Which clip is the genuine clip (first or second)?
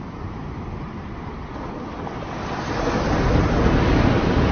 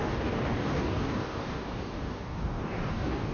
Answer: first